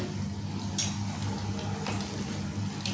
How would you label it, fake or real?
real